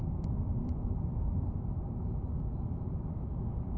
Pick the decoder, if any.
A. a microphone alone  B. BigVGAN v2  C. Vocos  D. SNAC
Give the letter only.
B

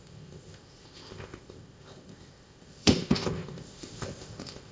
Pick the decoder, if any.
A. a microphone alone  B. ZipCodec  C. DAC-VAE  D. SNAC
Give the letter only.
B